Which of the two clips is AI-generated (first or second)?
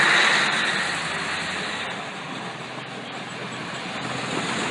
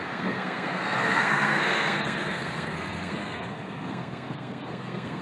second